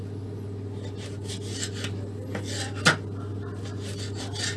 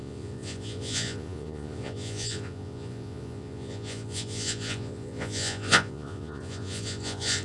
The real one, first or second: first